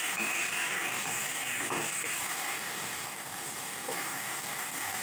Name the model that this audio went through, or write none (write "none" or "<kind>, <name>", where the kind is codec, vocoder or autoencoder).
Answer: codec, DAC